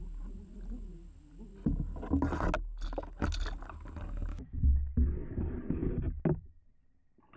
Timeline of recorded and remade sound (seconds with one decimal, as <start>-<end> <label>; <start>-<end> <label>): 0.0-4.3 recorded; 4.3-4.9 remade; 4.9-7.4 recorded